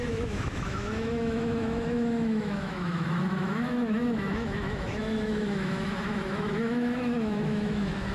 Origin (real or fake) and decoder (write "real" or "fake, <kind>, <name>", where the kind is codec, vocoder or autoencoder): fake, autoencoder, DAC-VAE